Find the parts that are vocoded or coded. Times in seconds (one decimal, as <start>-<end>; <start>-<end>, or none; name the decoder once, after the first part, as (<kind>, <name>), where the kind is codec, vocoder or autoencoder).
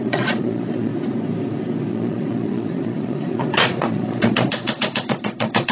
0.0-0.9 (vocoder, Vocos); 1.9-5.7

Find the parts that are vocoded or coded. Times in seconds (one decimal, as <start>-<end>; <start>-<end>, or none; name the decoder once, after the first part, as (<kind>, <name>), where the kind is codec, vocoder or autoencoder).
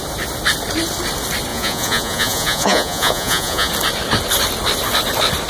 1.5-3.7 (vocoder, Vocos)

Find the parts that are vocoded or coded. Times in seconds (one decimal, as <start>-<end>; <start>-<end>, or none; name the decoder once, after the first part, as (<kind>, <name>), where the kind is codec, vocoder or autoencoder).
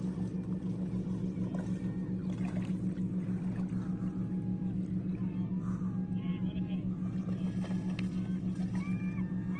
none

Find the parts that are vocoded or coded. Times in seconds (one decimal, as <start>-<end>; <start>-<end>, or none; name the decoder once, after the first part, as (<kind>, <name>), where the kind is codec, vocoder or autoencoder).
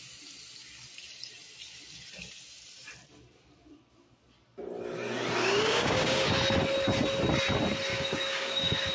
5.4-6.3 (codec, DAC); 7.9-8.9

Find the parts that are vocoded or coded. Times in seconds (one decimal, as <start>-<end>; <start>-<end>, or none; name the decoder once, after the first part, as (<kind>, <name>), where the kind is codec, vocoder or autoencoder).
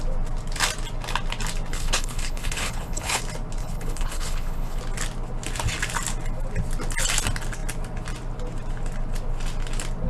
1.7-3.2 (codec, HILCodec); 3.6-4.8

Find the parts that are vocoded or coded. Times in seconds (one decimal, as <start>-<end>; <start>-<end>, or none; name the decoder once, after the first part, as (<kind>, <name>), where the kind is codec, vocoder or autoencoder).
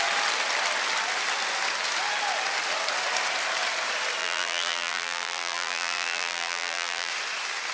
4.2-7.1 (vocoder, BigVGAN v2)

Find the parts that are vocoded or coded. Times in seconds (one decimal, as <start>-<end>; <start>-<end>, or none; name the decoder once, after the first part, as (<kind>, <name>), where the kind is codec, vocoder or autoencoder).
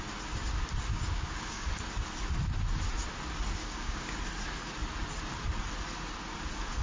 0.9-1.7 (codec, DAC); 3.6-4.2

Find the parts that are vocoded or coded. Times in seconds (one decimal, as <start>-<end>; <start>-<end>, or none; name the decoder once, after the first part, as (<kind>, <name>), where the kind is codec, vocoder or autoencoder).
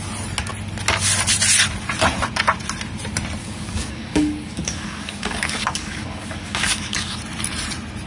3.4-7.2 (codec, DAC)